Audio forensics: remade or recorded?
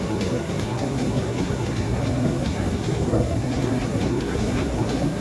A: remade